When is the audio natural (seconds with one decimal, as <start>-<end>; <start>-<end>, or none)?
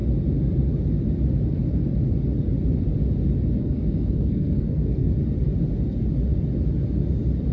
0.0-3.6; 5.1-7.5